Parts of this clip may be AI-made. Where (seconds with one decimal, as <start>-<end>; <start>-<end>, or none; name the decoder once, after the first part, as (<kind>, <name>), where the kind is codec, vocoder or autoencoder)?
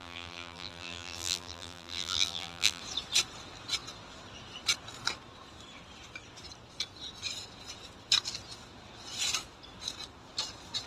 0.0-2.8 (vocoder, BigVGAN v2)